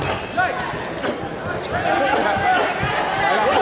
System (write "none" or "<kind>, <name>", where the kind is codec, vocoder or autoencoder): none